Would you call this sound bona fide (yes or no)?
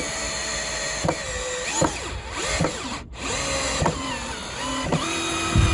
yes